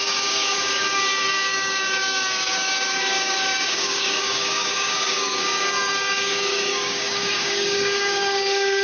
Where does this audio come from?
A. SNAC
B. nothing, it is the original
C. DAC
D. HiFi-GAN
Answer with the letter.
C